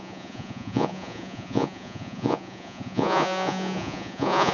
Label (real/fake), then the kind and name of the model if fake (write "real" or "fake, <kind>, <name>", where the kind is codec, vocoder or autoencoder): fake, vocoder, Vocos